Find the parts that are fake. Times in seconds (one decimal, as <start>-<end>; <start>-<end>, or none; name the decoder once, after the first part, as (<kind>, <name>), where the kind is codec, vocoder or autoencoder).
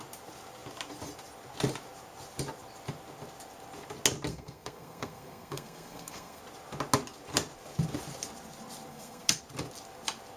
4.3-6.4 (codec, SNAC); 8.9-9.4